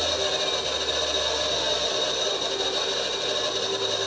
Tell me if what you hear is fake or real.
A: real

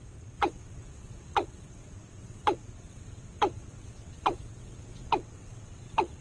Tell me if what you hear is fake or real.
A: fake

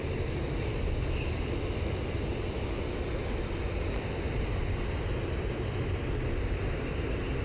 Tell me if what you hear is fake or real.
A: real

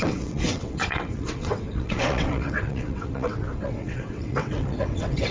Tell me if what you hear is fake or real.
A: fake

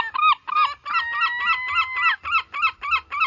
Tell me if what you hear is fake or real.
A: real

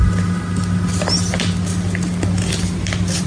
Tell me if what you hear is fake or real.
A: real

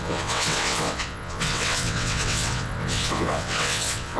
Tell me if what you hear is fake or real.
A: fake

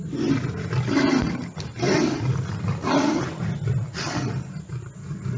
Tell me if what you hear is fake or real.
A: real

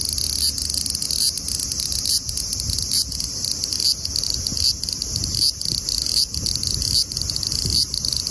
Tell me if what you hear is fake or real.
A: real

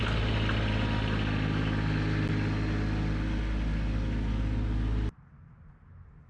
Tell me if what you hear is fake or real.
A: real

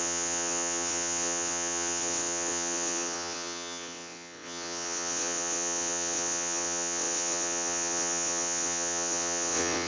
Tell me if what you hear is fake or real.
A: fake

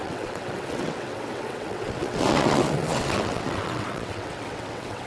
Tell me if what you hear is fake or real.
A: fake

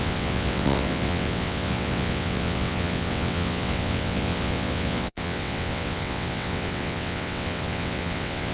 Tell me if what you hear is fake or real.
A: fake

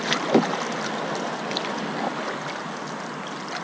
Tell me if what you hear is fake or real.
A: real